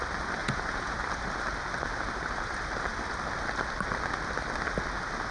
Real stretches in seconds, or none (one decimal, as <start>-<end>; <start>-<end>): 0.0-0.4; 1.0-5.3